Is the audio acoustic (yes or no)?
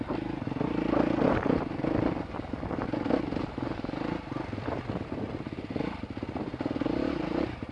yes